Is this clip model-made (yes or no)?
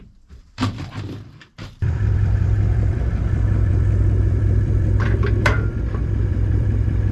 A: yes